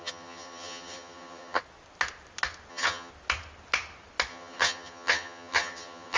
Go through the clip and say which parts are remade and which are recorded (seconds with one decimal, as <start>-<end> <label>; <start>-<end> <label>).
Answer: 0.0-1.6 remade; 1.6-2.7 recorded; 2.7-3.1 remade; 3.1-4.3 recorded; 4.3-6.2 remade